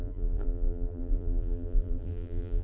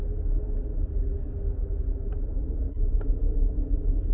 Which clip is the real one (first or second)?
second